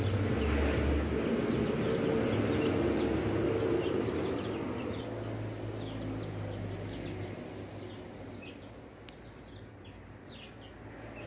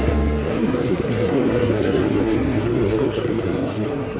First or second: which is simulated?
second